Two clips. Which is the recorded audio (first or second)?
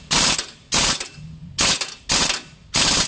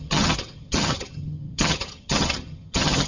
first